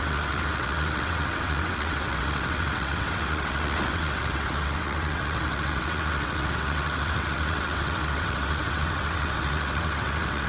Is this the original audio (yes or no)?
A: no